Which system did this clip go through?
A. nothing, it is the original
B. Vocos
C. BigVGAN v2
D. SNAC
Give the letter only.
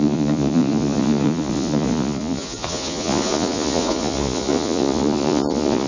B